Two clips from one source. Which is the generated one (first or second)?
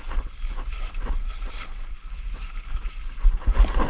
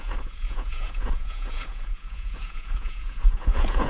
second